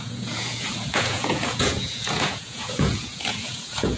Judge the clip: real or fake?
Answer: fake